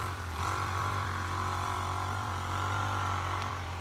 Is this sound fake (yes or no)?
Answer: yes